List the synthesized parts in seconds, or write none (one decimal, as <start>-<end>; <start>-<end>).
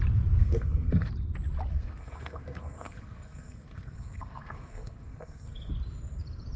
0.4-1.1; 1.7-5.7